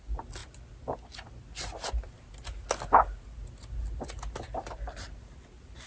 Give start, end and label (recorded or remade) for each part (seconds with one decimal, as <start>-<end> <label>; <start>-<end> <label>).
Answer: 0.0-5.9 recorded